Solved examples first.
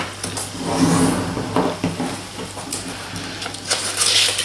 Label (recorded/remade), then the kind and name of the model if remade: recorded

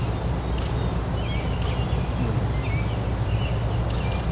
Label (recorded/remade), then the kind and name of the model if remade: recorded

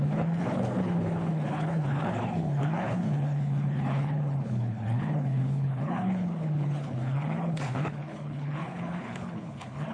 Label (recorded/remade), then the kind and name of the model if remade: remade, codec, HILCodec